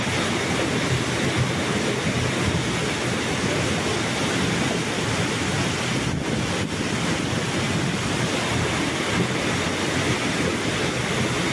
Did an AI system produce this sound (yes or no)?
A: no